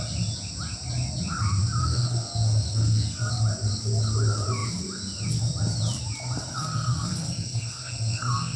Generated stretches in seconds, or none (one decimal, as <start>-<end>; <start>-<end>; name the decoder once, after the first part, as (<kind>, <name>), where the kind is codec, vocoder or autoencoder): 1.8-3.3 (codec, SNAC); 6.5-8.6